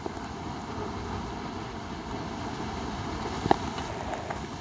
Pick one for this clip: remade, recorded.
recorded